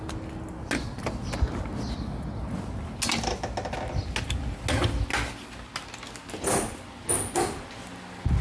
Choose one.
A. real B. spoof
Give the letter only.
A